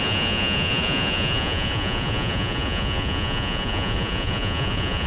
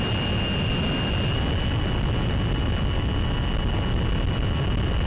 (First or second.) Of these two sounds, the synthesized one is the first